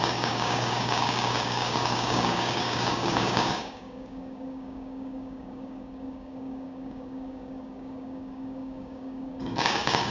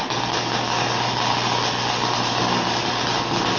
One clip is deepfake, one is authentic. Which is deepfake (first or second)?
first